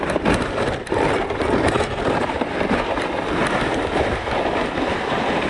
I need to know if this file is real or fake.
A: real